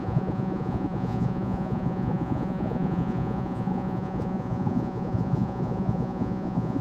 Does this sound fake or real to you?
fake